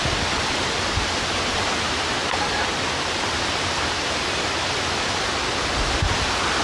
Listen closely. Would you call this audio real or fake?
real